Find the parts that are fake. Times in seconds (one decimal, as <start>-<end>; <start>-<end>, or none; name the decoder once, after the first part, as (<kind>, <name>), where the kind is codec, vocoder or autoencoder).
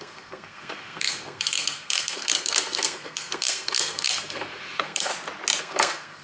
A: 0.0-5.1 (codec, SNAC); 5.6-6.2